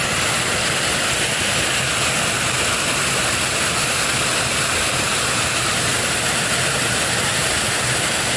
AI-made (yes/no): no